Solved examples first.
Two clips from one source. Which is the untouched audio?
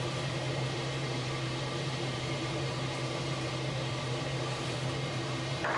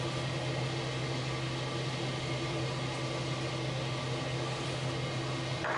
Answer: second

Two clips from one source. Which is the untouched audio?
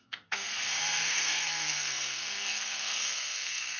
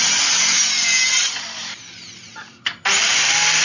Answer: second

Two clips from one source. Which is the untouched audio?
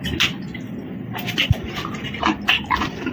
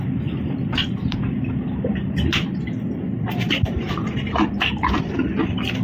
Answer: first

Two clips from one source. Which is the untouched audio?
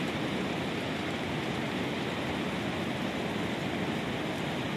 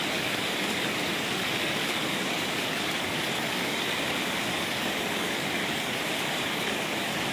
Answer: first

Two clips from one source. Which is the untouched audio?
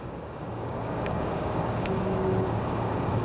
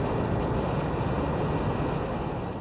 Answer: second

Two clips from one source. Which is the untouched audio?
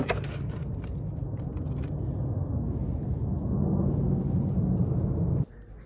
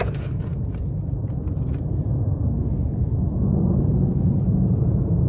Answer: first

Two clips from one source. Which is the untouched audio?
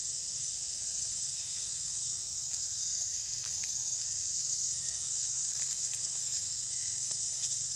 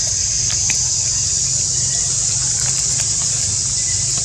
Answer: second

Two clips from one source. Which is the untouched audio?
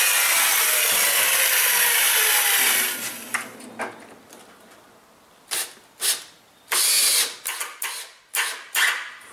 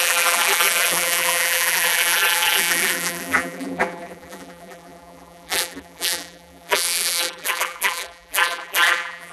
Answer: first